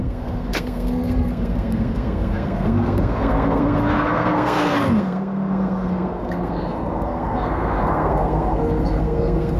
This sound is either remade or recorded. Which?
remade